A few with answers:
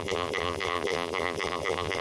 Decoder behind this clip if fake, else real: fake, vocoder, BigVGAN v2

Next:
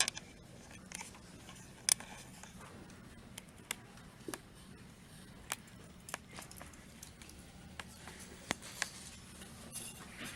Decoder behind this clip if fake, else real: real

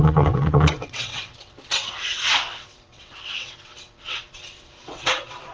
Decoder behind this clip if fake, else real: fake, vocoder, WaveNeXt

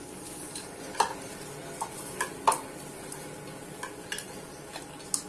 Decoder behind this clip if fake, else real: real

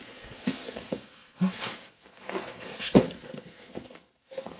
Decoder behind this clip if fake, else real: fake, codec, SNAC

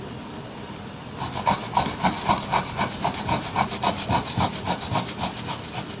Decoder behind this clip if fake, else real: real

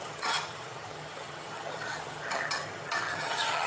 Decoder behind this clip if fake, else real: fake, vocoder, HiFi-GAN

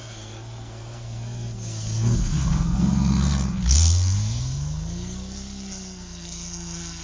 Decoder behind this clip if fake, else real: fake, codec, SNAC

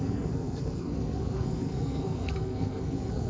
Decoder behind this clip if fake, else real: fake, codec, SNAC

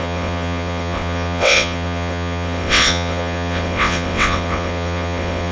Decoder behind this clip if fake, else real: fake, vocoder, WaveNeXt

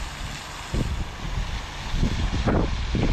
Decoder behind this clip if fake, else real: real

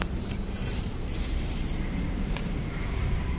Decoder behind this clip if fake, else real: fake, vocoder, BigVGAN v2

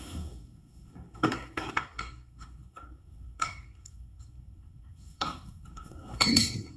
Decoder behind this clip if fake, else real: fake, codec, SNAC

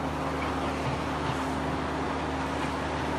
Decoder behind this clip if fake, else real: real